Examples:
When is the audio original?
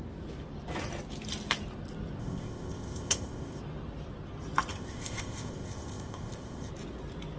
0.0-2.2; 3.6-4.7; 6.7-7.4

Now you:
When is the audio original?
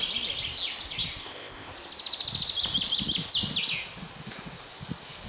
0.0-1.2; 1.7-5.3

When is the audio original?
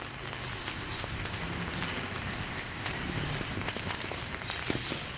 0.0-0.6; 1.4-2.3; 2.9-3.5; 4.0-5.2